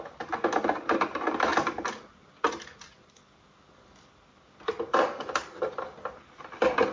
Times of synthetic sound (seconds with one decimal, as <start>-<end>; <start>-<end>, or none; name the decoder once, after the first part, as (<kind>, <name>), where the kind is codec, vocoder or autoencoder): none